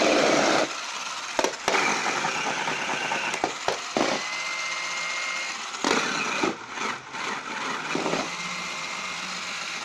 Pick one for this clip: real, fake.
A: real